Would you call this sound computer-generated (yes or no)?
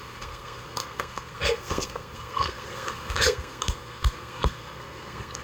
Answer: yes